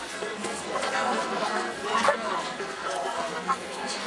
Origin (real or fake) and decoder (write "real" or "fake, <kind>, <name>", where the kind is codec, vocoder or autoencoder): fake, codec, SNAC